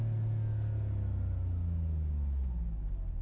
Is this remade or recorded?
recorded